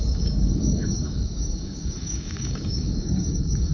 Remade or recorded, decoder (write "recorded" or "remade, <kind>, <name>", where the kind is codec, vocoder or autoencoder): remade, codec, DAC